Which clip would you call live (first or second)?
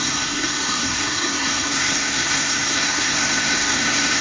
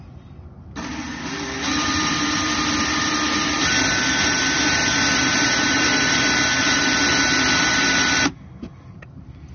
second